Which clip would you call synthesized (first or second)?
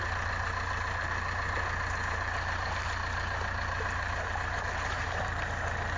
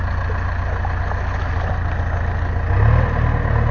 first